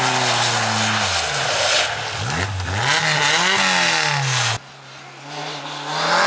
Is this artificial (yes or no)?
no